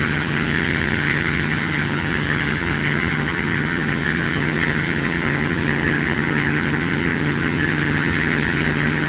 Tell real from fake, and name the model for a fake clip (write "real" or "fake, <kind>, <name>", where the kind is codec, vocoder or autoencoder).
fake, vocoder, HiFi-GAN